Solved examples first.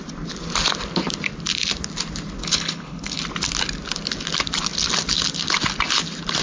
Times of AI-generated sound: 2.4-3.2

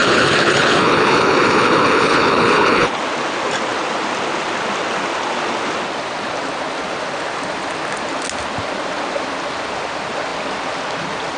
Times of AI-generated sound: 0.0-3.0